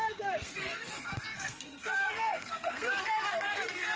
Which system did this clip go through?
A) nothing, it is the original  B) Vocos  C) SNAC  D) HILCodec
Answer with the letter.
C